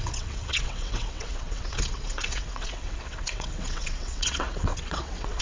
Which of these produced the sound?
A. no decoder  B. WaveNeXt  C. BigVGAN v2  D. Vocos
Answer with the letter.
B